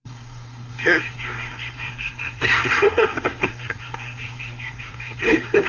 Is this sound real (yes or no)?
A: no